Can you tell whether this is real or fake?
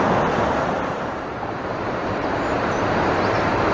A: fake